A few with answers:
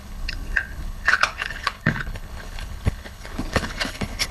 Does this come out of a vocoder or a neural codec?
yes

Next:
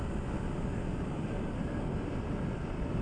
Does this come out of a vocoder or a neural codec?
no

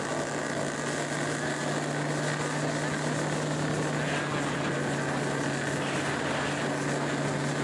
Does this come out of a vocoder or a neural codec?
no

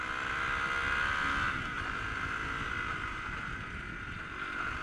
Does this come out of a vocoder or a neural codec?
no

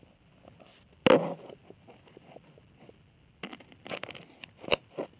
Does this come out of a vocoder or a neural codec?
no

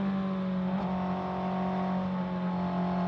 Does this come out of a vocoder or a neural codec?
no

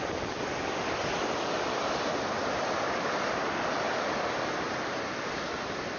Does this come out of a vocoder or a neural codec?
no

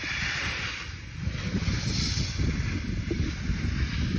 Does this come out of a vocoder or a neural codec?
no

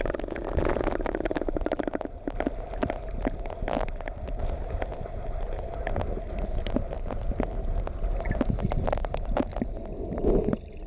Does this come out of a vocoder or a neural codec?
no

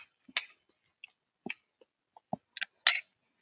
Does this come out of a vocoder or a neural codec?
no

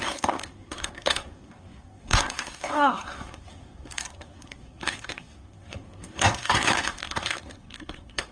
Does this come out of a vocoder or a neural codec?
yes